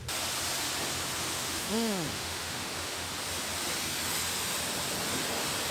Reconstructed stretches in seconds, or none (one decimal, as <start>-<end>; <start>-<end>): 1.3-3.1

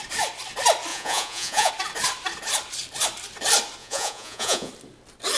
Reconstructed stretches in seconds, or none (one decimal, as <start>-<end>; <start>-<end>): 0.9-1.7; 3.8-4.7

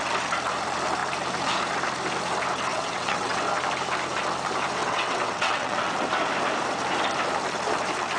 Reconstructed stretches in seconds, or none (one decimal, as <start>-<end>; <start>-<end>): 2.7-3.4; 4.8-5.9

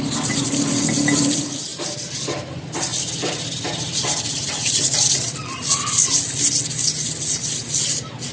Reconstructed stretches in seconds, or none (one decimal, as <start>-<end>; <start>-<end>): 2.9-6.2

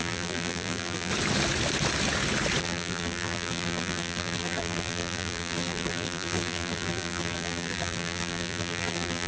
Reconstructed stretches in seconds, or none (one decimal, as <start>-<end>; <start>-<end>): 0.0-1.1; 2.6-9.3